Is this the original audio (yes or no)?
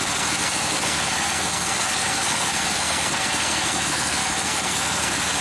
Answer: no